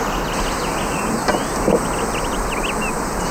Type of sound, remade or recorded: recorded